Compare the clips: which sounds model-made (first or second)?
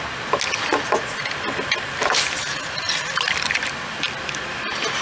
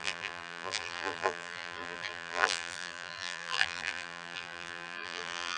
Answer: second